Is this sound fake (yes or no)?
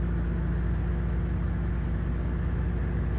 no